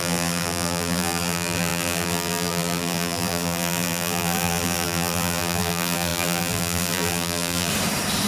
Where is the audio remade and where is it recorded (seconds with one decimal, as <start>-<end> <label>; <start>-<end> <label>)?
0.0-7.7 remade; 7.7-8.3 recorded